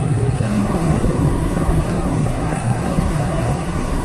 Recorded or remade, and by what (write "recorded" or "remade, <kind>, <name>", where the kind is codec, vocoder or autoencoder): remade, codec, SNAC